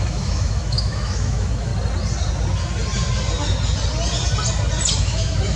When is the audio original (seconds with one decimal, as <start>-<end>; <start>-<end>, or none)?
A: 1.7-5.0